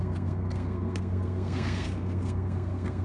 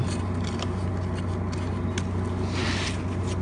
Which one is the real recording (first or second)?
second